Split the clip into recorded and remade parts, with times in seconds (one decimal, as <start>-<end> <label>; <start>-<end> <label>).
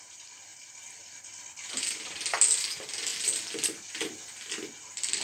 0.0-5.2 recorded